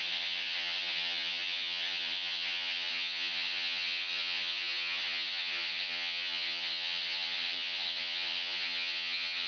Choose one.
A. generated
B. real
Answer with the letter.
A